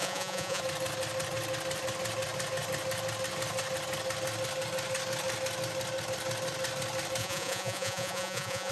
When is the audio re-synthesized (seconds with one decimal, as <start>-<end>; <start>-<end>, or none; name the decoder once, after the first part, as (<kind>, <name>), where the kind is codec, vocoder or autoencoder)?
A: 0.0-0.6 (vocoder, Vocos); 7.2-8.7